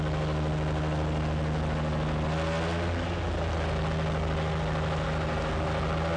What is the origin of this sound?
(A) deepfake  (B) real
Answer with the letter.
B